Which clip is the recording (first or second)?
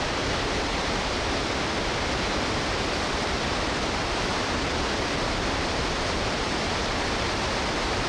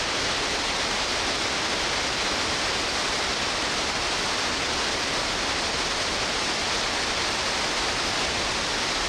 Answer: second